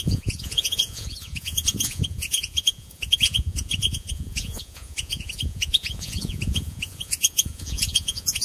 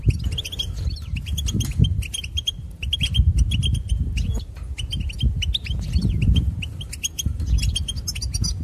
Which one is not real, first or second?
first